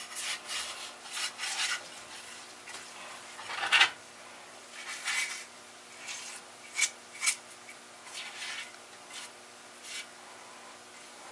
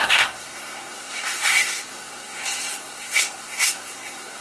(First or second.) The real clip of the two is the first